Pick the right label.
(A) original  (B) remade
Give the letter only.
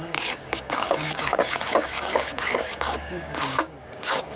B